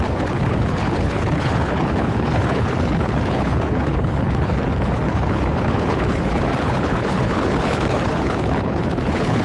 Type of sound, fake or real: fake